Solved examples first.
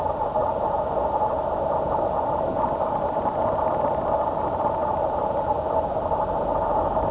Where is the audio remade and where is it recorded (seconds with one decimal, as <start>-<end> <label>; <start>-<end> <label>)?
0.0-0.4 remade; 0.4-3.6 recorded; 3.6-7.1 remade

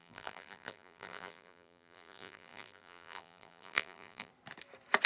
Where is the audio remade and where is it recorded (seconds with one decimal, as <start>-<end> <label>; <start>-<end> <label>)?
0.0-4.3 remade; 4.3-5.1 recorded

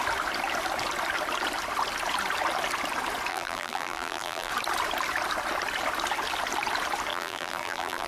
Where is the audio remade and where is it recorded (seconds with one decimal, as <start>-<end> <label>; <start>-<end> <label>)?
0.0-3.3 recorded; 3.3-4.5 remade; 4.5-7.1 recorded; 7.1-8.1 remade